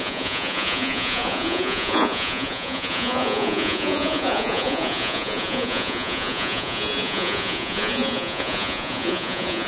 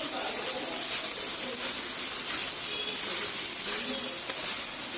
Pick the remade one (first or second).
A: first